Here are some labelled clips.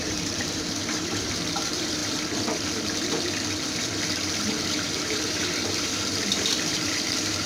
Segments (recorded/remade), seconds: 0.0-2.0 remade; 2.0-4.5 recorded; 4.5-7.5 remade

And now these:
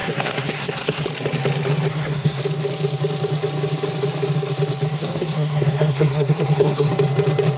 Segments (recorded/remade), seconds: 0.0-1.0 remade; 1.0-1.9 recorded; 1.9-2.4 remade; 2.4-4.9 recorded; 4.9-6.9 remade; 6.9-7.6 recorded

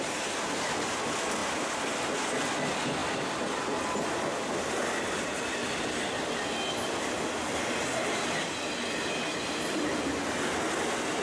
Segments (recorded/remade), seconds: 0.0-1.4 recorded; 1.4-2.2 remade; 2.2-3.0 recorded; 3.0-5.0 remade; 5.0-11.2 recorded

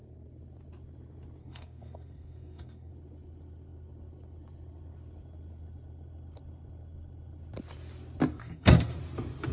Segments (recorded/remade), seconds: 0.0-1.4 recorded; 1.4-2.9 remade; 2.9-8.4 recorded; 8.4-9.0 remade; 9.0-9.5 recorded

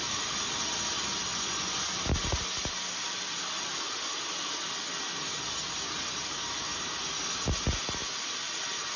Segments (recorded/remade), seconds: 0.0-1.3 recorded; 1.3-1.9 remade; 1.9-9.0 recorded

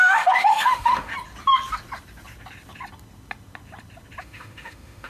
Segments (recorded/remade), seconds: 0.0-1.1 remade; 1.1-4.2 recorded; 4.2-5.1 remade

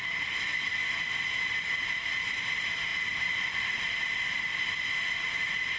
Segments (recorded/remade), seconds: 0.0-5.8 recorded